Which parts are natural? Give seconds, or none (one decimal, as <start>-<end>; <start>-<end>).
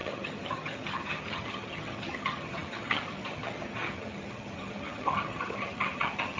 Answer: none